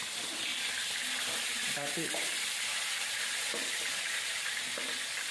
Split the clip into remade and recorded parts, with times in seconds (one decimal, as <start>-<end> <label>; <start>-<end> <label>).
0.0-0.5 recorded; 0.5-1.1 remade; 1.1-1.5 recorded; 1.5-4.7 remade; 4.7-5.3 recorded